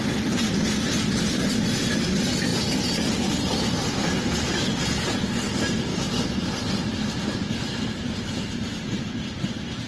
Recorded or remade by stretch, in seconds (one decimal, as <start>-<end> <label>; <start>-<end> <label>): 0.0-2.5 recorded; 2.5-4.4 remade; 4.4-5.9 recorded; 5.9-9.4 remade; 9.4-9.9 recorded